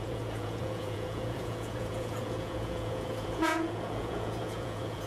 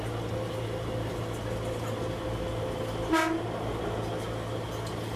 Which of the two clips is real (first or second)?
second